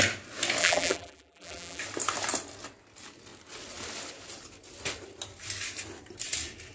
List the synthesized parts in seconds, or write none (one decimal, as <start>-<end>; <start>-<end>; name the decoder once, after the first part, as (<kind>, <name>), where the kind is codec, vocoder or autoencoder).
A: 0.6-1.8 (vocoder, BigVGAN v2)